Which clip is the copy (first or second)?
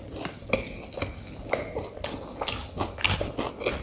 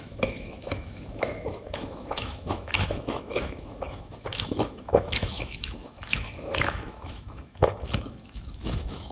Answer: second